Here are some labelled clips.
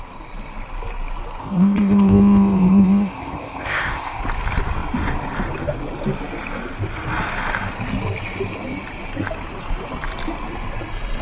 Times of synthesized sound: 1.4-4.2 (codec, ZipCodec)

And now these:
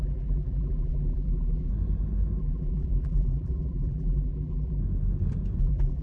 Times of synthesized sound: 0.0-1.7 (vocoder, BigVGAN v2); 2.4-4.8; 5.6-6.0

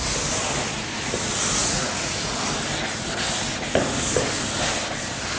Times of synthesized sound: 1.6-2.4 (vocoder, Vocos)

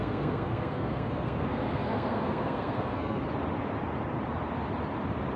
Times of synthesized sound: 0.0-3.2 (codec, SNAC)

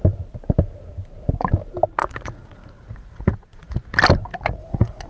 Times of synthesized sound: 2.0-3.8 (vocoder, Vocos); 4.3-5.1

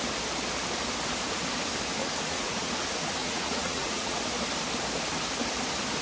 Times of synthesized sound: 2.0-2.7 (vocoder, Vocos); 3.2-4.2

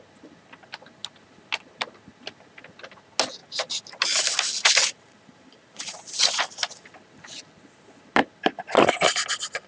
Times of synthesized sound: 3.4-6.9 (vocoder, BigVGAN v2)

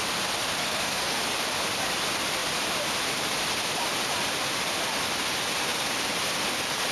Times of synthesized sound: 0.6-1.2 (codec, SNAC)